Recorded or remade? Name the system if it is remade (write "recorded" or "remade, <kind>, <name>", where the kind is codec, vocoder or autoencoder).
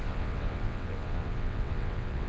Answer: remade, vocoder, WaveNeXt